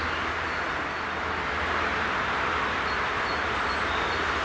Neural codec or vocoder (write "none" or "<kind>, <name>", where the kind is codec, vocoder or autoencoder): none